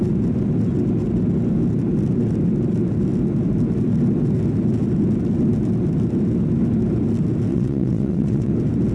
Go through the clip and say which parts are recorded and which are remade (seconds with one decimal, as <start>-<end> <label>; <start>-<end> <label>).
0.0-7.5 recorded; 7.5-8.5 remade; 8.5-8.9 recorded